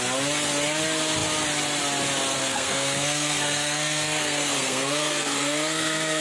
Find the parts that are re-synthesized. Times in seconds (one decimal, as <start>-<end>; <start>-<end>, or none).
2.4-6.2